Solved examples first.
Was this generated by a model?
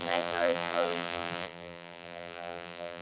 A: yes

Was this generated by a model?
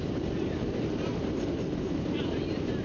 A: yes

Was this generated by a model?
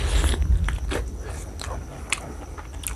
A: no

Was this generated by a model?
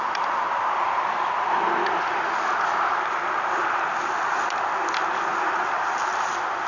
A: no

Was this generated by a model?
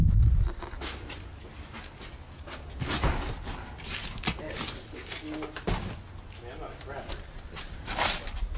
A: no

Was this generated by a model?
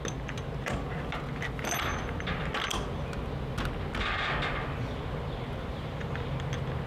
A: no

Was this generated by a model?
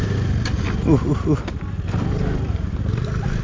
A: no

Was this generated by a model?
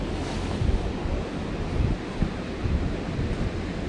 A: no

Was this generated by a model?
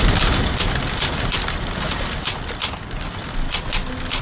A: no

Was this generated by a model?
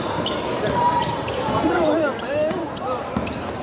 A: yes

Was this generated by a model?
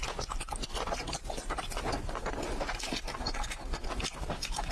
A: no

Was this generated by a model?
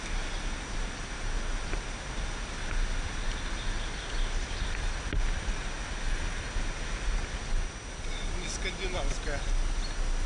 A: no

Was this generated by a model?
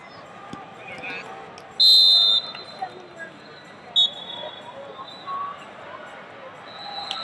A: no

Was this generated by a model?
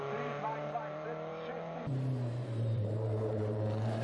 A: yes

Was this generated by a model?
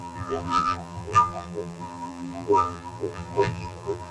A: yes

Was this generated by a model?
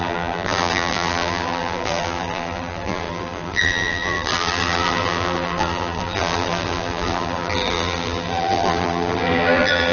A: yes